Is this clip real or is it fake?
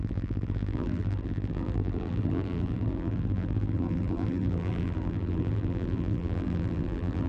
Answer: fake